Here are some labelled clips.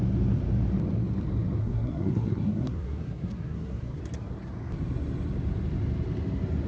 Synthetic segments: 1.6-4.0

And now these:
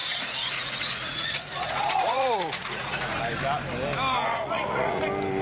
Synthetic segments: 0.0-3.2; 4.3-5.0

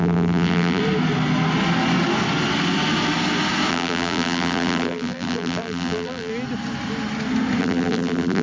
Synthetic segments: 0.0-0.8; 3.7-6.3; 7.6-8.4

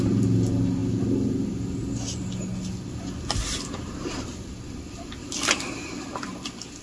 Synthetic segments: none

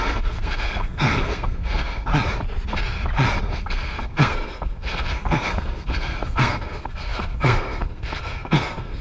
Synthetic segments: 0.0-2.1; 3.4-9.0